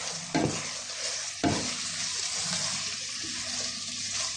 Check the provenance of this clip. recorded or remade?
recorded